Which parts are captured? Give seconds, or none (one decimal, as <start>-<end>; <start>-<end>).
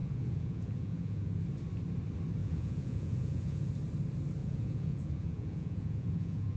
1.4-2.4; 3.7-4.4